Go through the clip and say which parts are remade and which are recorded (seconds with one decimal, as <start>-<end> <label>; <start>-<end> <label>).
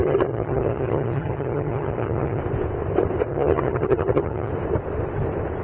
0.0-2.4 remade; 2.4-3.3 recorded; 3.3-4.5 remade; 4.5-5.6 recorded